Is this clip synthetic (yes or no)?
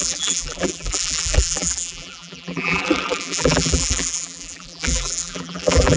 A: yes